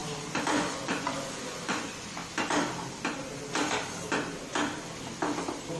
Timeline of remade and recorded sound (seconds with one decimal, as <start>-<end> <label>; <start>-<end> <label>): 0.0-0.5 recorded; 0.5-2.2 remade; 2.2-5.8 recorded